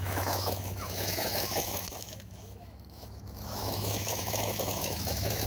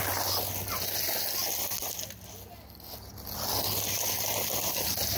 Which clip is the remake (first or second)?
first